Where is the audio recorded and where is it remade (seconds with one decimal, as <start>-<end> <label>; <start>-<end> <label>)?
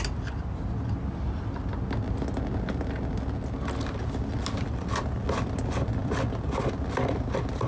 0.0-7.7 recorded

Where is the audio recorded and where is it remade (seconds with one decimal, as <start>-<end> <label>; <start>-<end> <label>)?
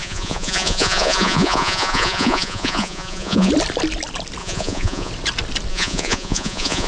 0.0-3.5 remade; 3.5-4.4 recorded; 4.4-5.1 remade; 5.1-5.7 recorded; 5.7-6.9 remade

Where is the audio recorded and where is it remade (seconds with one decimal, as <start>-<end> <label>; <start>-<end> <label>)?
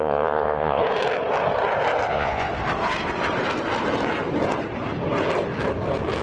0.0-0.8 remade; 0.8-2.1 recorded; 2.1-2.5 remade; 2.5-6.2 recorded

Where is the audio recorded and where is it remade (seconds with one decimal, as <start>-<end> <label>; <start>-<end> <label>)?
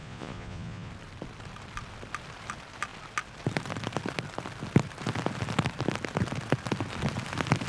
0.0-0.9 remade; 0.9-7.7 recorded